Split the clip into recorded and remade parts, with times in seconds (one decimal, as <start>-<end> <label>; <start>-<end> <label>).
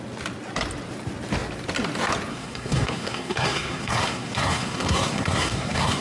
0.0-2.3 recorded; 2.3-6.0 remade